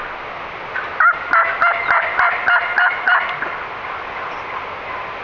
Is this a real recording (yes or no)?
yes